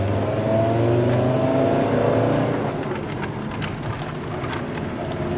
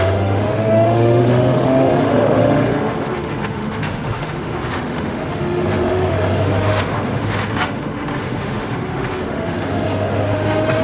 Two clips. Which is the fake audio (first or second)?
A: second